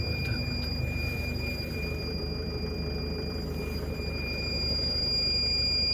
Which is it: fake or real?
fake